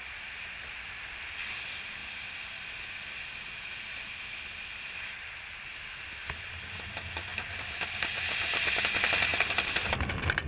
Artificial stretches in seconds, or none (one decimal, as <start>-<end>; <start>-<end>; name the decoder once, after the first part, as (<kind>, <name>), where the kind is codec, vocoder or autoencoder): 2.0-6.0 (vocoder, BigVGAN v2)